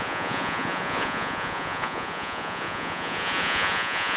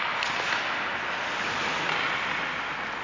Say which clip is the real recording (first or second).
second